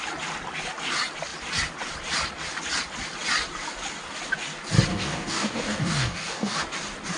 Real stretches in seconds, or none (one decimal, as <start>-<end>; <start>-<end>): 0.0-4.9; 6.6-7.2